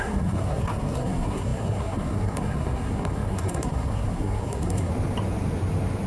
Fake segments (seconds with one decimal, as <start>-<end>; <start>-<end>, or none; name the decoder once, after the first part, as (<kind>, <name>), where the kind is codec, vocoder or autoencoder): 0.0-4.9 (codec, SNAC)